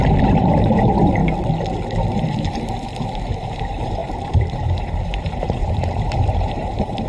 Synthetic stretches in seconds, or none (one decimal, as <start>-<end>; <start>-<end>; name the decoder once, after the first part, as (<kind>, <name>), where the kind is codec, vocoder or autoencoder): 0.0-1.2 (vocoder, BigVGAN v2); 3.6-7.1